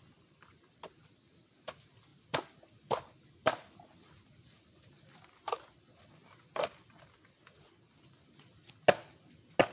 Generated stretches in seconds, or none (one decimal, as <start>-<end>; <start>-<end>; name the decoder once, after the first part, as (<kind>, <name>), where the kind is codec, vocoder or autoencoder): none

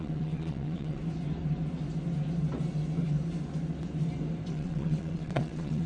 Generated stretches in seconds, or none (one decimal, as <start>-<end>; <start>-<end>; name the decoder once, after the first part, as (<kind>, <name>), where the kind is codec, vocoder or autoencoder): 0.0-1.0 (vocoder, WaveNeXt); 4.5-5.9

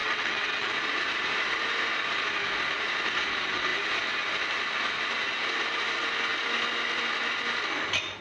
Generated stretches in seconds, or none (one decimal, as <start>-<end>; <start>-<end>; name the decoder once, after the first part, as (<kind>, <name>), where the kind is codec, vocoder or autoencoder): 0.0-0.7 (vocoder, WaveNeXt)